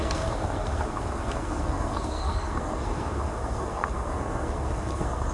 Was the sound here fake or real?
fake